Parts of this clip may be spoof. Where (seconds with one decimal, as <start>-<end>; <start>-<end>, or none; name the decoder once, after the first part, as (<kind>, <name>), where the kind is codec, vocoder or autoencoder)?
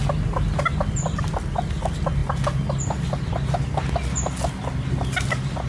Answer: none